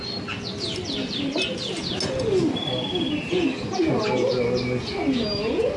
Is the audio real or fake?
real